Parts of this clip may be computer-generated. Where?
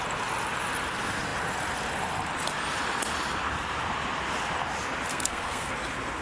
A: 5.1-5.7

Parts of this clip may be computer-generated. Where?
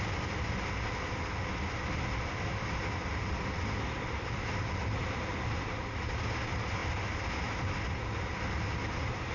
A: none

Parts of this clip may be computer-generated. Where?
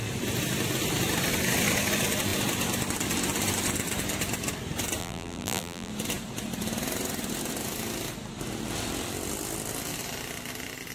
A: 5.0-5.9